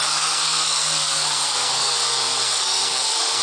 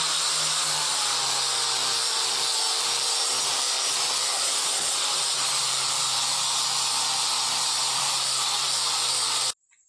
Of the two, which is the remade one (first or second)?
first